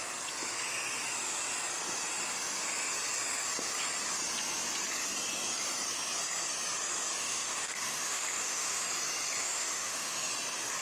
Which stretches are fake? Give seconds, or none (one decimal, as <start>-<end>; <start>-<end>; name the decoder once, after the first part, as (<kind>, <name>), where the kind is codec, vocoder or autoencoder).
7.2-8.8 (autoencoder, DAC-VAE); 9.4-10.3